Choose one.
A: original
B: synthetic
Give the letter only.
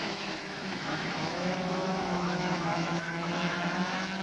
B